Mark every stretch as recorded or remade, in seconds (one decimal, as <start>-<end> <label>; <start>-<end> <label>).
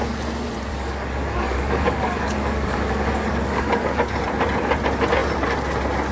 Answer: 0.0-0.7 recorded; 0.7-4.2 remade; 4.2-6.1 recorded